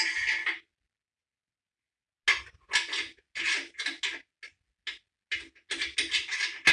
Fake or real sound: real